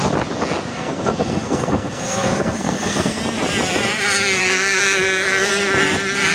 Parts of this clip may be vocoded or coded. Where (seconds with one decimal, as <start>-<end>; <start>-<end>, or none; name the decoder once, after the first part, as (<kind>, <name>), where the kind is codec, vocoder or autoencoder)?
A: 0.7-3.2 (codec, SNAC); 4.4-5.5